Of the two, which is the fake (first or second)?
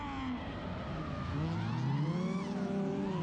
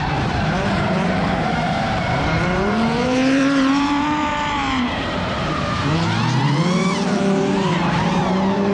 second